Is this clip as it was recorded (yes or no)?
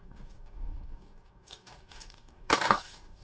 no